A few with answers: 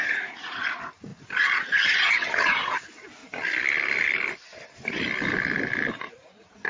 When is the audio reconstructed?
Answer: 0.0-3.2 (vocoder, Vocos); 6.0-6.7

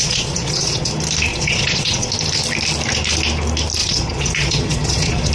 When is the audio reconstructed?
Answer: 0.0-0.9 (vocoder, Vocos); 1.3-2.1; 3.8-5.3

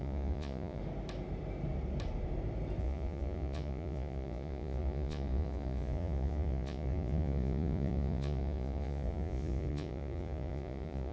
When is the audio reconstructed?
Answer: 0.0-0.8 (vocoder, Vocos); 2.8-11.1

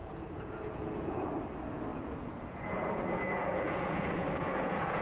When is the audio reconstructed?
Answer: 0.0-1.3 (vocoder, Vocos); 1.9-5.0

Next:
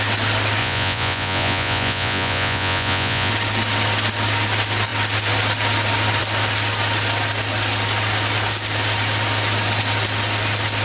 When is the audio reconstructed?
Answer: 0.6-3.3 (vocoder, Vocos)

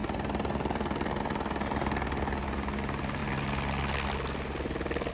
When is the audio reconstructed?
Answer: none